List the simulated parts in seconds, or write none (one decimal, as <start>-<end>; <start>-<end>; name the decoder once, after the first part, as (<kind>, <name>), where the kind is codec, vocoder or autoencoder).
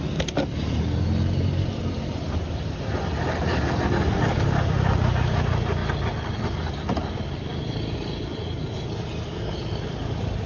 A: none